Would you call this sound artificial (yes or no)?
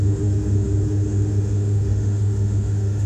yes